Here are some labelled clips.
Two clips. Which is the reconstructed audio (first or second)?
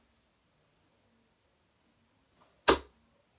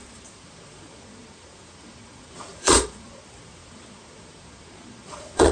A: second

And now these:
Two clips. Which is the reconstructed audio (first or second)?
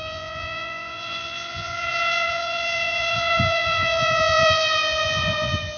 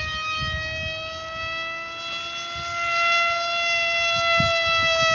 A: first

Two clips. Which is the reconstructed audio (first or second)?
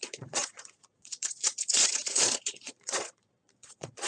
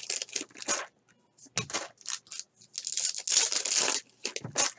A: first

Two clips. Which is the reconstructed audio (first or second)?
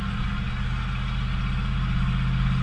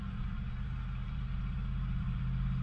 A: second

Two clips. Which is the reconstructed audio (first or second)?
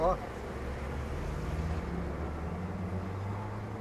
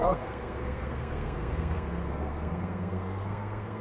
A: second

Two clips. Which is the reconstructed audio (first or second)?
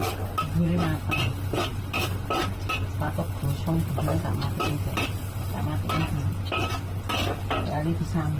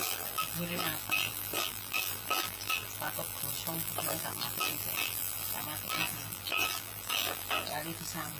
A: second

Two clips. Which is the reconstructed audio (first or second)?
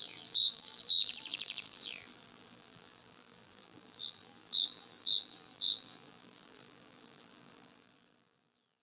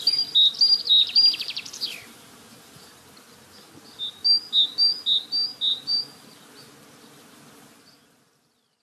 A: first